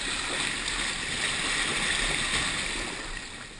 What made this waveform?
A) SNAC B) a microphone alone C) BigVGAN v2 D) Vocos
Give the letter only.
B